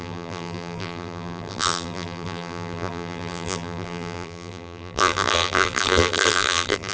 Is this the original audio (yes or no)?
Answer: no